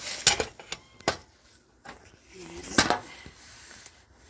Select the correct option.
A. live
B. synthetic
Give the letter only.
A